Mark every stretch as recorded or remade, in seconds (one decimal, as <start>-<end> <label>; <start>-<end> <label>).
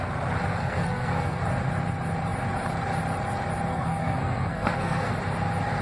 0.0-0.5 recorded; 0.5-1.4 remade; 1.4-3.7 recorded; 3.7-5.1 remade; 5.1-5.8 recorded